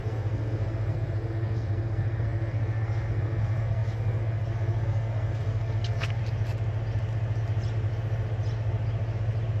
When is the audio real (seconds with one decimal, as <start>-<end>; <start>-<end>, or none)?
6.2-9.6